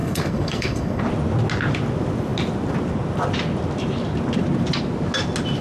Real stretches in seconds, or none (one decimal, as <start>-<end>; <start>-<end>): 1.0-5.6